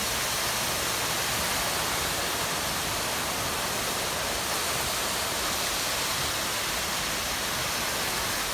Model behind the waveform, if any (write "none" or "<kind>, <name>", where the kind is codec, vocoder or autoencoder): none